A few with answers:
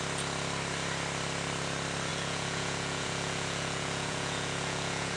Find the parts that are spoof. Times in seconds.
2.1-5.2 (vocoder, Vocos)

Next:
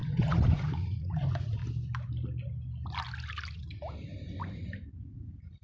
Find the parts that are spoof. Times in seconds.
0.0-1.6 (vocoder, Vocos); 5.0-5.6

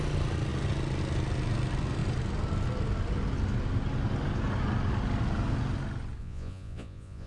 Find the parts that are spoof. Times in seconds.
6.2-7.3 (vocoder, Vocos)

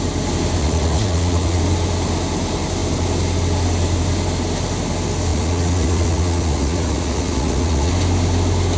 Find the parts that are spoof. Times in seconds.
0.6-1.6 (vocoder, Vocos); 5.3-7.9

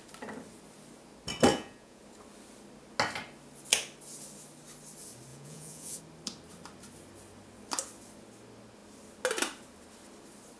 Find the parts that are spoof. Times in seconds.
1.5-2.0 (vocoder, Vocos); 5.3-6.0